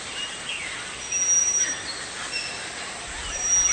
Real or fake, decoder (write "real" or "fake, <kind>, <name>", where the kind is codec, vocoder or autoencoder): real